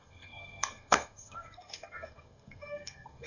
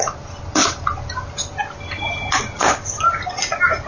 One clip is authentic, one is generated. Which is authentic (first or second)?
second